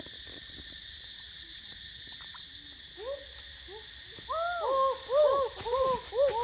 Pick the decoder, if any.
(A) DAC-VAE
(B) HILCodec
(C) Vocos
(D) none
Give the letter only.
D